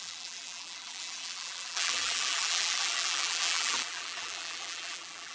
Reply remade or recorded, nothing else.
remade